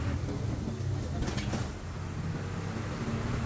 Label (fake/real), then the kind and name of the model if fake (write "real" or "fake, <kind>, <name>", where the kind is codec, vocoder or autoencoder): real